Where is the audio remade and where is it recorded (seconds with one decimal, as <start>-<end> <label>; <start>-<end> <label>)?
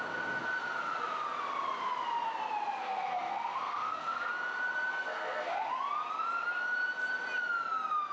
0.0-2.8 recorded; 2.8-4.3 remade; 4.3-4.9 recorded; 4.9-5.7 remade; 5.7-8.1 recorded